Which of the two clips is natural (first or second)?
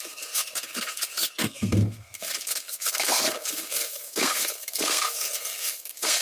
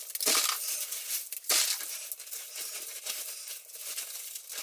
second